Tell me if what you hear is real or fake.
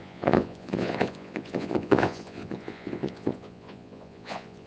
fake